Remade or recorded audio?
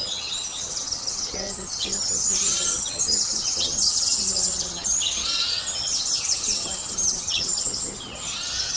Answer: remade